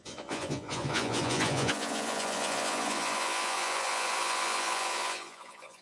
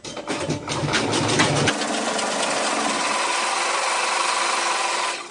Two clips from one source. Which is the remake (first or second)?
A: first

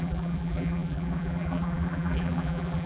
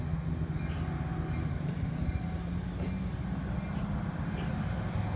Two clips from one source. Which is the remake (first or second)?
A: first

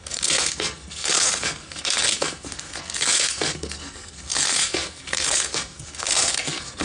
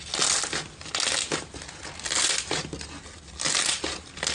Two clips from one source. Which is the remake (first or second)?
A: first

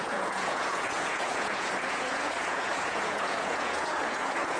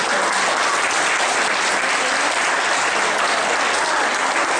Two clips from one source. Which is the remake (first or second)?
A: first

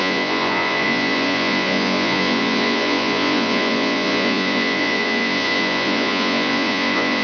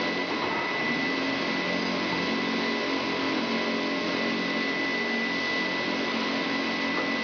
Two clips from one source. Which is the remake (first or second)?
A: first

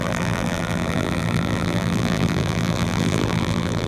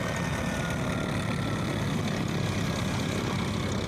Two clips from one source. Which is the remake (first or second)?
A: first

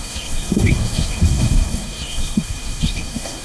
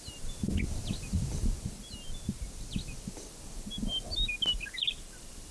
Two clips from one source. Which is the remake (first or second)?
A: first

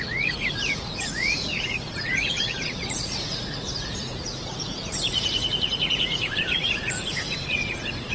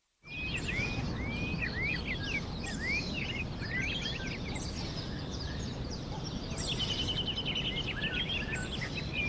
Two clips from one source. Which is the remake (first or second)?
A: first